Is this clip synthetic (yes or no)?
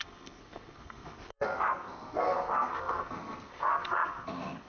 yes